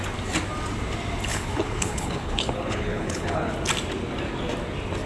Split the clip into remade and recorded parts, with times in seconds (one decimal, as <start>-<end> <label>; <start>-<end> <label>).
0.0-1.3 recorded; 1.3-3.5 remade; 3.5-5.1 recorded